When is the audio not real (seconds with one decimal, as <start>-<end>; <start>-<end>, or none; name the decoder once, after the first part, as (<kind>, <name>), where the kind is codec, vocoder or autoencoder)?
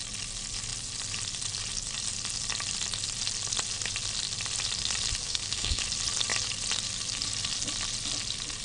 5.2-5.8 (codec, SNAC)